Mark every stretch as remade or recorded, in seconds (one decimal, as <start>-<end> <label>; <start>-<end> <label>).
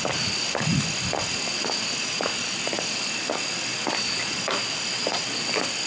0.0-5.9 recorded